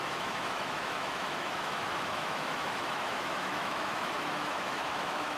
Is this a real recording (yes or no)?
no